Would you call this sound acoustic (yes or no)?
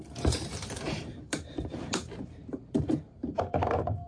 no